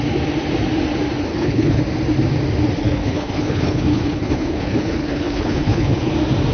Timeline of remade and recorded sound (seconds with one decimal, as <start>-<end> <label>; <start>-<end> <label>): 0.0-1.3 recorded; 1.3-1.8 remade; 1.8-2.8 recorded; 2.8-6.1 remade; 6.1-6.5 recorded